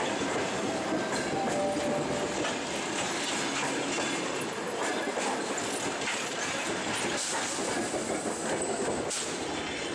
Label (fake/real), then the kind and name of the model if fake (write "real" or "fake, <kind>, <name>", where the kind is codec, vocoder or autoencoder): real